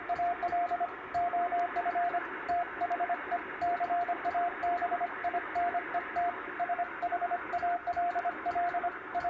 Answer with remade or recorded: recorded